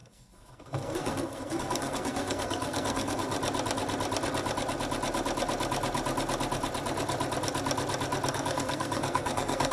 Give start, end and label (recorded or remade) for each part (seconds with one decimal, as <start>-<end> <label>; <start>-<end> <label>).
0.0-3.3 remade; 3.3-8.3 recorded; 8.3-9.7 remade